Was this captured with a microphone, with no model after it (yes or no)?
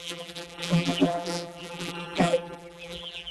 no